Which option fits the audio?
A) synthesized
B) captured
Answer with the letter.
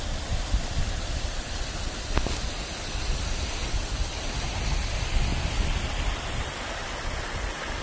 B